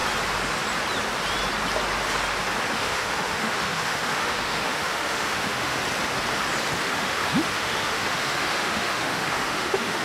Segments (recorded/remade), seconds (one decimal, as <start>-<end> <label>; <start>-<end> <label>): 0.0-2.7 recorded; 2.7-5.8 remade; 5.8-6.8 recorded; 6.8-10.0 remade